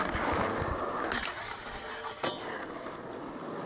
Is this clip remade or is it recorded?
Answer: recorded